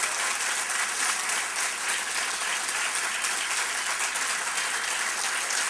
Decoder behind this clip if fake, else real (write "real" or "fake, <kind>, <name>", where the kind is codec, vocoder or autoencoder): real